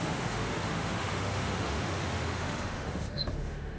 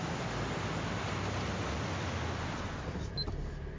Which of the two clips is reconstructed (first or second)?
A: first